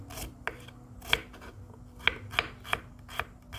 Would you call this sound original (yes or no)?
yes